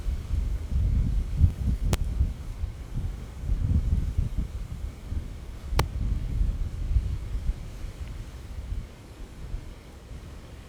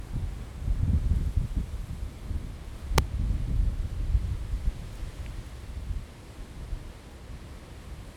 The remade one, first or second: first